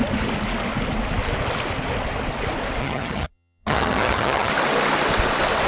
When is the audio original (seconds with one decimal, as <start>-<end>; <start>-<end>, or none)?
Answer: 0.0-2.8; 4.5-5.7